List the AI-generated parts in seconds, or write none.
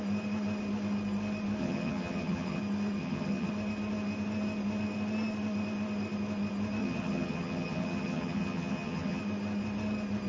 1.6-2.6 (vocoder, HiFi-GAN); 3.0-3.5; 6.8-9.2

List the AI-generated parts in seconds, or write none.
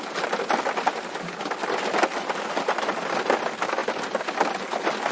none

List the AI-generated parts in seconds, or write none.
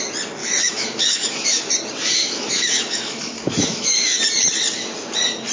0.4-1.7 (autoencoder, DAC-VAE); 2.2-4.2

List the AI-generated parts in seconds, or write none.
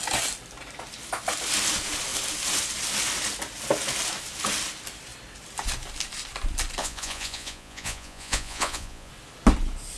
6.8-9.1 (vocoder, Vocos)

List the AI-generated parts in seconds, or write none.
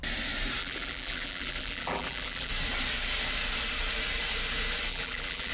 0.6-2.5 (vocoder, BigVGAN v2); 4.9-5.5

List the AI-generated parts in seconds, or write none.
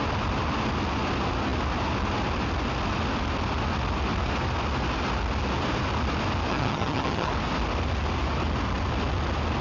6.5-7.3 (vocoder, HiFi-GAN)